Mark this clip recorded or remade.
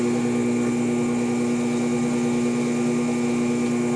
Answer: recorded